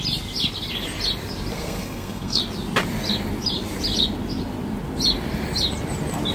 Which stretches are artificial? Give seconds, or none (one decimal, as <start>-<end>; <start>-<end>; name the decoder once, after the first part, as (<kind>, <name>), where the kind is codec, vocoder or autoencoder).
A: 1.5-2.4 (codec, SNAC)